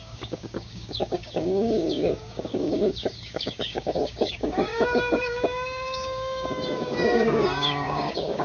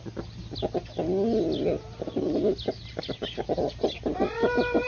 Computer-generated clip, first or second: first